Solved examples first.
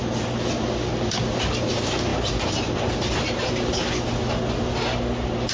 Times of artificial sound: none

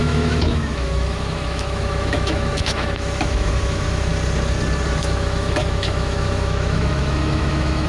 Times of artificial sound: 0.0-4.1 (autoencoder, DAC-VAE); 5.0-7.9

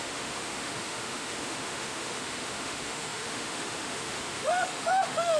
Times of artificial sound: 0.0-5.4 (autoencoder, DAC-VAE)

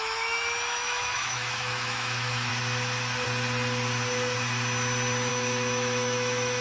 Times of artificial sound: 0.0-2.5 (autoencoder, DAC-VAE); 5.3-6.6

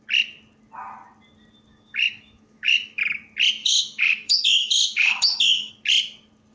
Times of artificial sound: 1.7-3.0 (autoencoder, DAC-VAE); 3.6-5.7

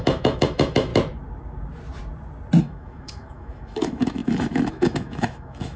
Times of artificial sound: 0.0-0.9 (autoencoder, DAC-VAE); 2.6-5.8